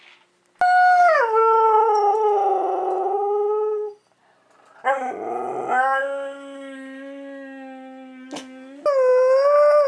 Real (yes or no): yes